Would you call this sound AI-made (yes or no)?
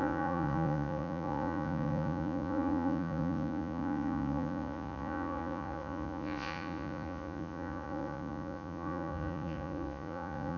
yes